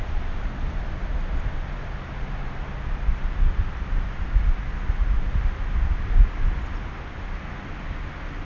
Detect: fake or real real